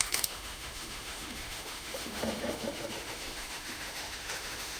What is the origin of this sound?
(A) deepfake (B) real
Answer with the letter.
A